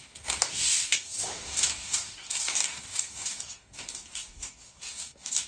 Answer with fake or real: fake